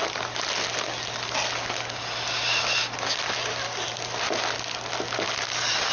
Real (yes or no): yes